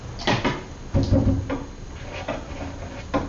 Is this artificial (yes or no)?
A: no